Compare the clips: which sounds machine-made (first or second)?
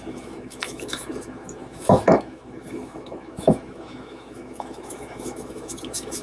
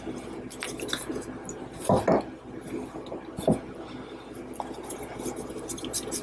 first